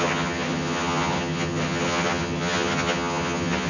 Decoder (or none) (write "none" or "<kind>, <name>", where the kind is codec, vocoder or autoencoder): vocoder, HiFi-GAN